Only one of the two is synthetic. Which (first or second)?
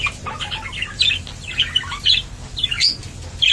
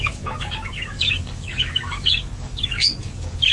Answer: second